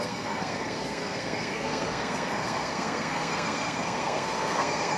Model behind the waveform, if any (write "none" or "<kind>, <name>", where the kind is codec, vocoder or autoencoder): codec, SNAC